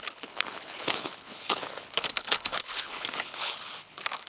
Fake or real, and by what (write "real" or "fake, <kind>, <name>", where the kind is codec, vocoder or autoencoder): fake, codec, HILCodec